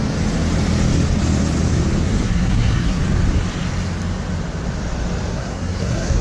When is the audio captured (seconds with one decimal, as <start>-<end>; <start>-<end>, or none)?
0.0-2.0; 3.0-5.3